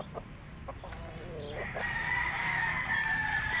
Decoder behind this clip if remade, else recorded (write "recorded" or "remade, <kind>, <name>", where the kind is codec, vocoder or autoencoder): recorded